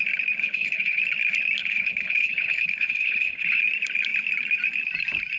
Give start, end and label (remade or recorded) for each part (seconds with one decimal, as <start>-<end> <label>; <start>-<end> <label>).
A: 0.0-0.4 recorded; 0.4-1.0 remade; 1.0-1.6 recorded; 1.6-3.6 remade; 3.6-5.4 recorded